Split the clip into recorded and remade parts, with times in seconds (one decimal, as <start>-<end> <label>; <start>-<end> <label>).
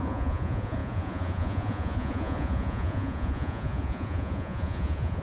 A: 0.0-5.2 remade